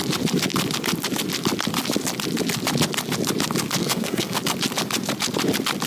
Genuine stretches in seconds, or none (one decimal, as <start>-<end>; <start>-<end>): 0.0-3.8; 4.4-5.9